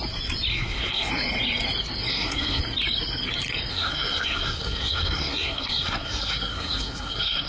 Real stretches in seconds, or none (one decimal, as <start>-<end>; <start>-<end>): 0.0-0.5; 1.1-2.1; 2.6-3.7